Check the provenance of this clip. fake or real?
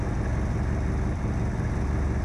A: real